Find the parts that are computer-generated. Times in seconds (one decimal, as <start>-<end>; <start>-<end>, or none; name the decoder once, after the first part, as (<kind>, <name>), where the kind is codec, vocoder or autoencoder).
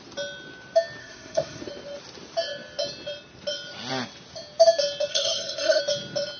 1.0-1.6 (codec, SNAC); 5.1-5.8